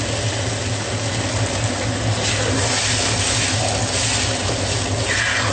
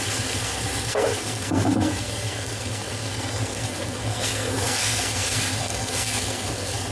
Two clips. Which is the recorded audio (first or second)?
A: first